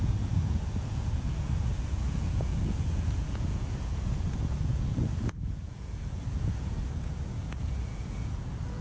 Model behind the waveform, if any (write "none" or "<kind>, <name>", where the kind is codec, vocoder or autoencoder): vocoder, Vocos